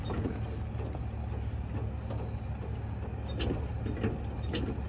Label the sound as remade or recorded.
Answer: recorded